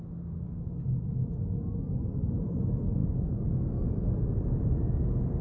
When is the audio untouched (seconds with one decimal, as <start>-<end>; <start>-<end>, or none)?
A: 0.0-3.0; 3.6-5.4